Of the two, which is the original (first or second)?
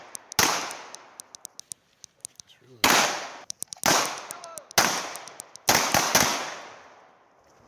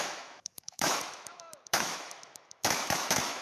first